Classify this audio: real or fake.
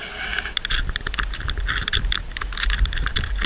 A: real